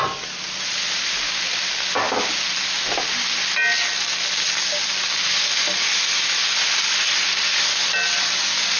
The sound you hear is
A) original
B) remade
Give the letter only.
A